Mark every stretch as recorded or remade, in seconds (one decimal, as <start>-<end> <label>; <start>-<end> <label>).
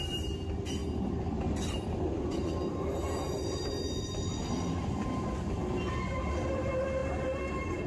0.0-7.0 recorded; 7.0-7.9 remade